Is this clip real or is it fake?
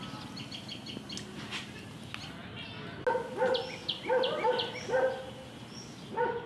real